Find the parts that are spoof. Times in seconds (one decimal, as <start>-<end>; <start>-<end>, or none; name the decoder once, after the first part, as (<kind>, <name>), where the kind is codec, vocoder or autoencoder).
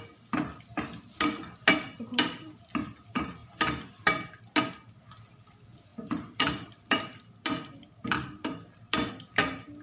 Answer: 3.4-4.0 (vocoder, BigVGAN v2); 5.9-9.1